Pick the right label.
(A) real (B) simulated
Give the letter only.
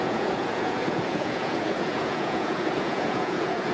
B